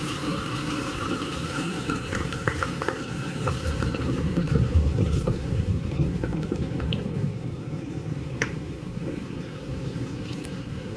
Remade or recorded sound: remade